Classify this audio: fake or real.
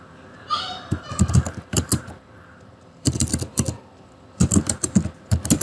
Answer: real